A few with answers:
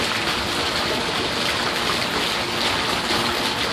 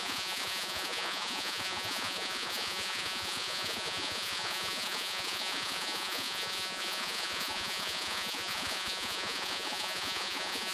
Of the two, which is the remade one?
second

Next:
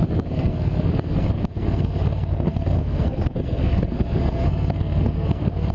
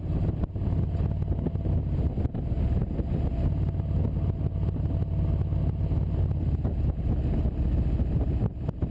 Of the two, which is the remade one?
first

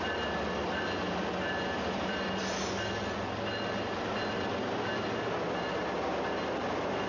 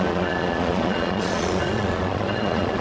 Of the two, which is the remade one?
second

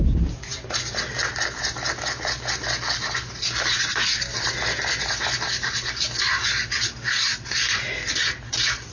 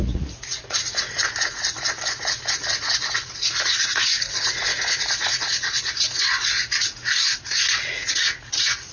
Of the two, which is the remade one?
second